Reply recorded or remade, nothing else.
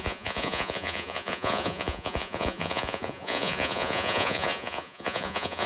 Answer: remade